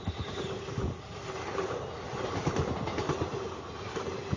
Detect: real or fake real